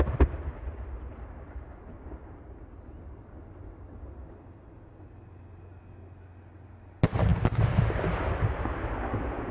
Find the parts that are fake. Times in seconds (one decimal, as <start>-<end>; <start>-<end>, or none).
none